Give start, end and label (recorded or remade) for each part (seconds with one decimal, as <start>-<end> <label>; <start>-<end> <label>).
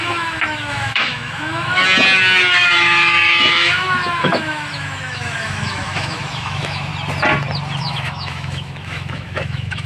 0.0-1.8 remade; 1.8-2.5 recorded; 2.5-6.9 remade; 6.9-7.8 recorded; 7.8-9.9 remade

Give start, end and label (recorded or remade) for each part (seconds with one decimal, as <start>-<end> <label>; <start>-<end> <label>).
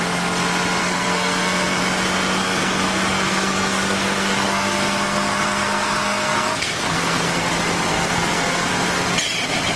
0.0-0.8 recorded; 0.8-1.8 remade; 1.8-2.4 recorded; 2.4-7.5 remade; 7.5-7.9 recorded; 7.9-8.7 remade; 8.7-9.8 recorded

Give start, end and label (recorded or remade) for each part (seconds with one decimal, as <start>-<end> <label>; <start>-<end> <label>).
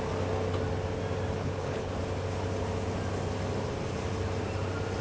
0.0-1.4 recorded; 1.4-1.9 remade; 1.9-5.0 recorded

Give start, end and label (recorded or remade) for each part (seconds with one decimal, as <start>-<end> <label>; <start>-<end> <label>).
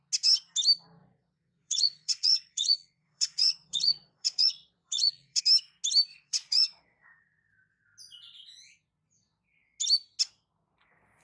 0.0-1.0 recorded; 1.0-5.4 remade; 5.4-6.1 recorded; 6.1-7.2 remade; 7.2-11.2 recorded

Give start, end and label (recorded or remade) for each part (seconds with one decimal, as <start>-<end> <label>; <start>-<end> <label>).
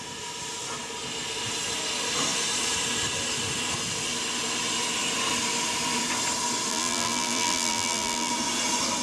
0.0-6.7 recorded; 6.7-8.3 remade; 8.3-9.0 recorded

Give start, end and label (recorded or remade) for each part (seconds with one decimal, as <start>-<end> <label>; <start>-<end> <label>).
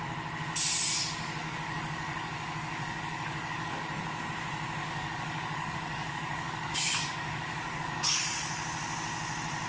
0.0-1.4 recorded; 1.4-3.9 remade; 3.9-4.8 recorded; 4.8-8.2 remade; 8.2-9.7 recorded